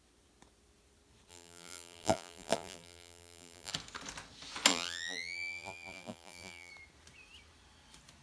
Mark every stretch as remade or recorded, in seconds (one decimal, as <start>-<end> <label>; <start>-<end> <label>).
0.0-1.3 recorded; 1.3-3.7 remade; 3.7-4.7 recorded; 4.7-6.7 remade; 6.7-8.2 recorded